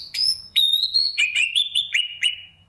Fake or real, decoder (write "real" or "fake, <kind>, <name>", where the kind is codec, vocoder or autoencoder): fake, vocoder, Vocos